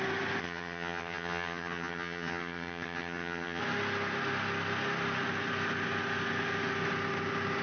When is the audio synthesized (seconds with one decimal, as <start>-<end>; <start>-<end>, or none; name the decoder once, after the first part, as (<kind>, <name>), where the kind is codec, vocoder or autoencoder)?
0.4-3.6 (vocoder, HiFi-GAN)